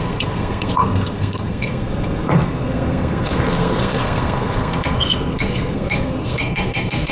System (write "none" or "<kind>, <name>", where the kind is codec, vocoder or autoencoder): codec, SNAC